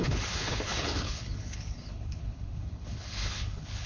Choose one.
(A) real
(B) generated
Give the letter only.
B